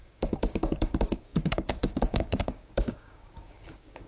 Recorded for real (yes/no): no